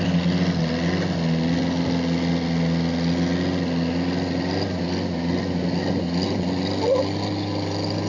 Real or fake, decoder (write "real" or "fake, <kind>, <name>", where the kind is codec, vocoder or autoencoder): real